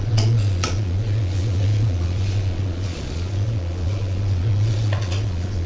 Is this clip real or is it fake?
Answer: fake